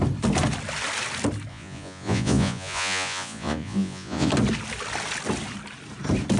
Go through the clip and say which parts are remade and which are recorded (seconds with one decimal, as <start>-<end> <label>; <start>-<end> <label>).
0.0-1.5 recorded; 1.5-4.3 remade; 4.3-6.4 recorded